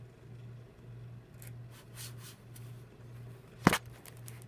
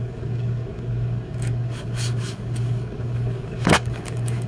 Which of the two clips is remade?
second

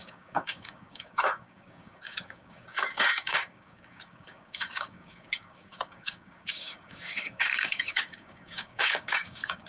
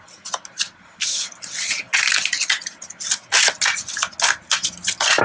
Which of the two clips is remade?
first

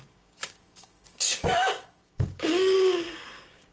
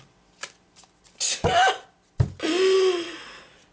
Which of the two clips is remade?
first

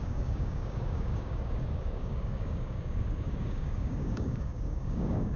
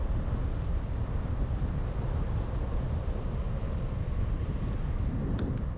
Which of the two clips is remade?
first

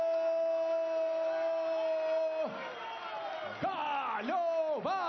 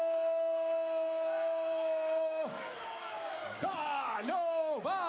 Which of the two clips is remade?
second